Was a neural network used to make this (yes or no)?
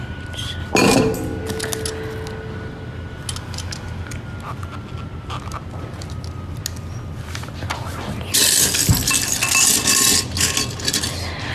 no